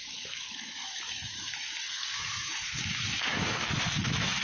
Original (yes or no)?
no